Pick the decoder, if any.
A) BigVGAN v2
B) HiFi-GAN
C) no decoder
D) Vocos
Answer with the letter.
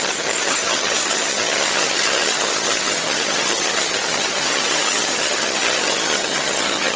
B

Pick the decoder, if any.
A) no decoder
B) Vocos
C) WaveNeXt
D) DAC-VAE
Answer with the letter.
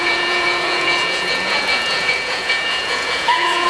B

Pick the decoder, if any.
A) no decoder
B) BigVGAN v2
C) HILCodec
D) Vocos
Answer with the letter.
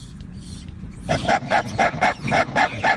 D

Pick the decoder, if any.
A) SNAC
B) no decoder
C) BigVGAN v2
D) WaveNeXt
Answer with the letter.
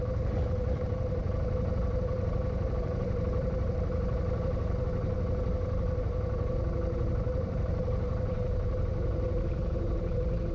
C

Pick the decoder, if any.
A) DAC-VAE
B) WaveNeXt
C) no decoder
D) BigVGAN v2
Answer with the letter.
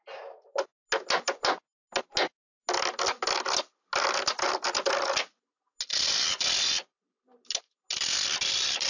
C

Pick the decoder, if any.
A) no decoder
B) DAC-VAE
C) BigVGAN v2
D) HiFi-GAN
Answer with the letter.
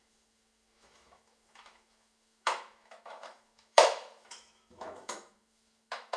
B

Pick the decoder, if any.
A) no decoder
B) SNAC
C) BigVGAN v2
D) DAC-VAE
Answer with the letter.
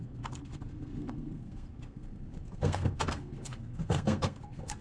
B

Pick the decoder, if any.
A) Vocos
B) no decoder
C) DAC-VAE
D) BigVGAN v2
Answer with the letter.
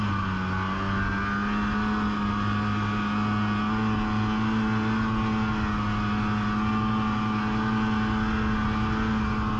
B